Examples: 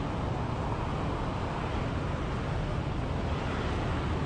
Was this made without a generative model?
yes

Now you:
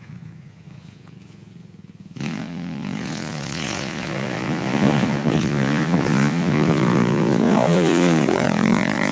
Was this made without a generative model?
no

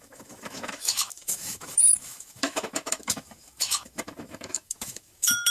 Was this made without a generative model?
no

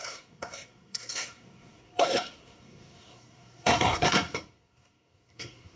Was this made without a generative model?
no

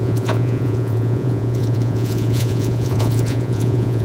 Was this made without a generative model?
no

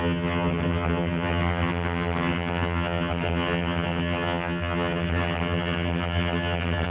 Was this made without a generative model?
no